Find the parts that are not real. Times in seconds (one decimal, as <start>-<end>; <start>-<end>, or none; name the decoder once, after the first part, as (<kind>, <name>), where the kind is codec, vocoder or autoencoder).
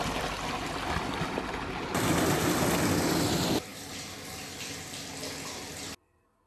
none